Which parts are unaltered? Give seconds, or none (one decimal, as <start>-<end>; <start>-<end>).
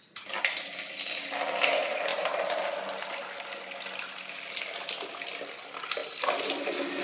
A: 0.0-7.0